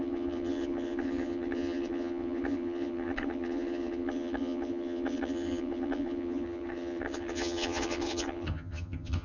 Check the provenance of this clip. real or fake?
fake